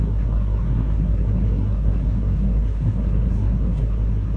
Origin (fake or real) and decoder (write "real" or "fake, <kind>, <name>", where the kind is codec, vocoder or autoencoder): fake, codec, SNAC